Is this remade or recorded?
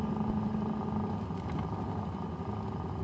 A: recorded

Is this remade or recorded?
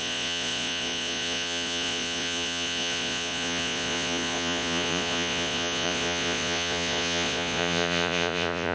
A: remade